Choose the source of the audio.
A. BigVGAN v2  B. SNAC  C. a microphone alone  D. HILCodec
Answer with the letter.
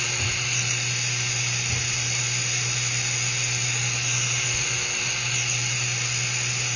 C